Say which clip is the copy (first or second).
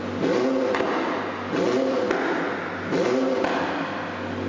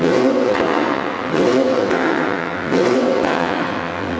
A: second